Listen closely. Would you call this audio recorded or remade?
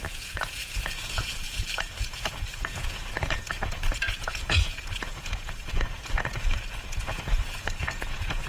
remade